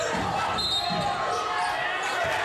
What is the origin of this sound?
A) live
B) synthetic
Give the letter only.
A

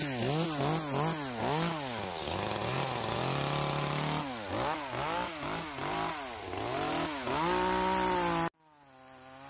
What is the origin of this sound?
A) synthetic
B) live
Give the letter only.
B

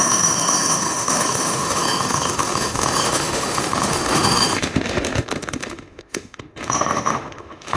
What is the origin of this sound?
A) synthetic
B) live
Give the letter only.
A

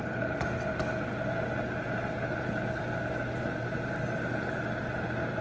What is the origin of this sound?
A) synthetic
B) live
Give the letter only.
B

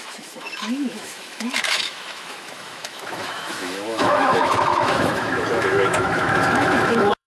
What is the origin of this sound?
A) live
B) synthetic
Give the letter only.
B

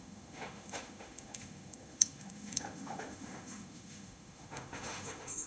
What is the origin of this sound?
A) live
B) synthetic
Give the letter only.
B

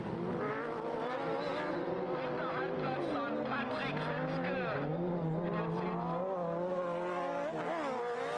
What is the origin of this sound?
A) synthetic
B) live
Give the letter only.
B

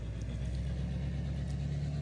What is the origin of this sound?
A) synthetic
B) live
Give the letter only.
B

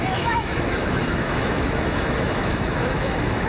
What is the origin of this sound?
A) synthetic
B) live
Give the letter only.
A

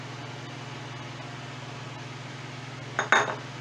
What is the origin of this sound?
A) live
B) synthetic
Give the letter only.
A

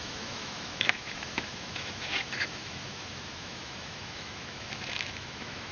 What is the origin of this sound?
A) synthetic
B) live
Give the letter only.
A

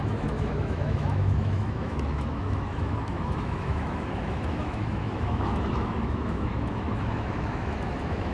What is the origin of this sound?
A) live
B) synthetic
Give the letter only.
B